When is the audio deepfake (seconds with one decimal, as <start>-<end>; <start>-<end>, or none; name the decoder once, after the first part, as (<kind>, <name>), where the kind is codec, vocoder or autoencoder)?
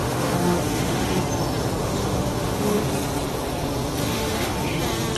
0.0-1.2 (autoencoder, DAC-VAE); 1.8-2.8; 4.0-4.8